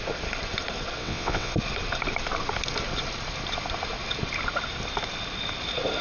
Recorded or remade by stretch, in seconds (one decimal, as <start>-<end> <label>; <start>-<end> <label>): 0.0-1.0 recorded; 1.0-1.5 remade; 1.5-6.0 recorded